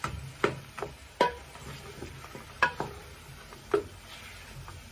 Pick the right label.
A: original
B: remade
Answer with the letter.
A